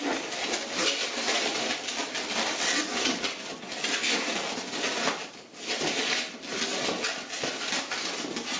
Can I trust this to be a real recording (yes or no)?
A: yes